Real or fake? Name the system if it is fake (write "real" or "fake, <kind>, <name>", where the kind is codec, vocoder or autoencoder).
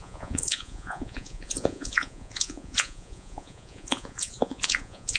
fake, vocoder, Vocos